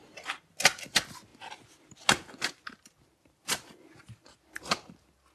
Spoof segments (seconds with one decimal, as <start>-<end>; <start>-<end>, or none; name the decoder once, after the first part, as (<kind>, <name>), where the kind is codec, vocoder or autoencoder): none